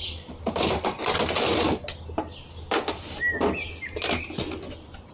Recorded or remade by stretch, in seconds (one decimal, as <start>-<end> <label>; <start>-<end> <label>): 0.0-5.1 recorded